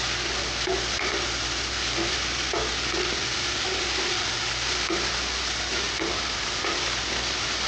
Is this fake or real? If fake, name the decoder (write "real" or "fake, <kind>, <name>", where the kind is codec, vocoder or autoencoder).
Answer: real